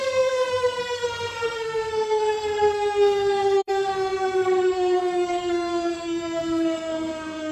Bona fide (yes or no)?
no